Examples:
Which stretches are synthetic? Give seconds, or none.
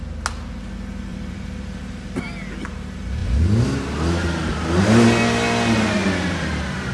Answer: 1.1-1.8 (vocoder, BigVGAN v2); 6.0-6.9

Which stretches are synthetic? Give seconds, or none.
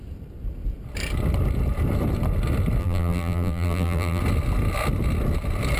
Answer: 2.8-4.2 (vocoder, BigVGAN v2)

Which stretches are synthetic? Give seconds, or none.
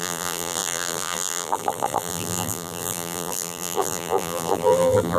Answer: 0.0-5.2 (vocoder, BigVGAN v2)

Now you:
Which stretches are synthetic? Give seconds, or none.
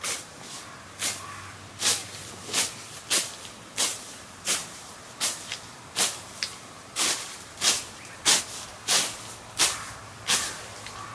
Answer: 3.9-4.9 (vocoder, BigVGAN v2)